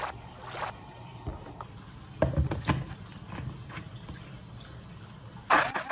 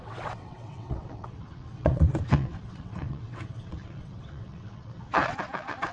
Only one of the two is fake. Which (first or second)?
second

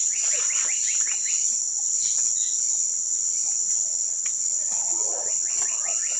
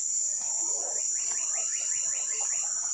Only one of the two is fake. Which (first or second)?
first